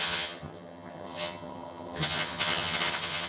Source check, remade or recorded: remade